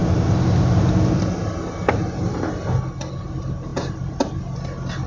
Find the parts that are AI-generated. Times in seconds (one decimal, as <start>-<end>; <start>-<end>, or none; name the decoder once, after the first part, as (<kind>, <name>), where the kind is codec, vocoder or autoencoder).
none